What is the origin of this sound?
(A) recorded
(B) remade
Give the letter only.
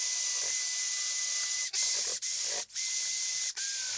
A